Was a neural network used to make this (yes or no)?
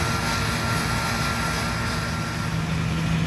no